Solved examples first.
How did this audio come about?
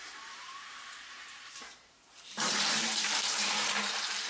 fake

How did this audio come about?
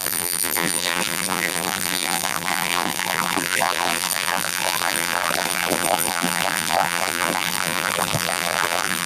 fake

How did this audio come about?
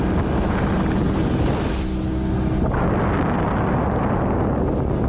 real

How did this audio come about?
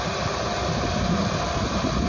fake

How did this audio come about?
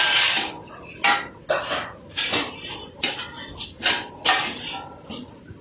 fake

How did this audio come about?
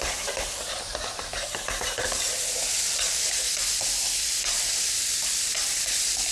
fake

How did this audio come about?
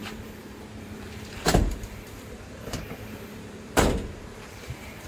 fake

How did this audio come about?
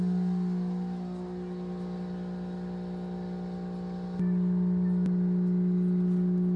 real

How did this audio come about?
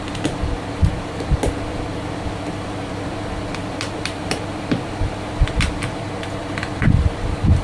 fake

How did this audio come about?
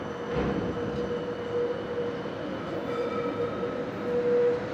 real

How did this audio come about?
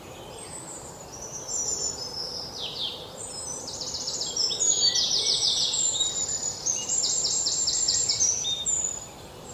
fake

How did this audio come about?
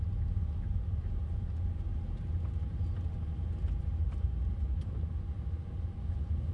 real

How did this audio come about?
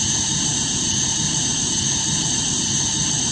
fake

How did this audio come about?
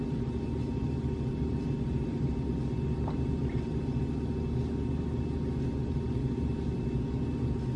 real